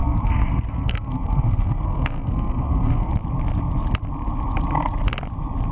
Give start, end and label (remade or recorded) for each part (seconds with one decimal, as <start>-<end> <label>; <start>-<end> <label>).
0.0-3.1 remade; 3.1-5.7 recorded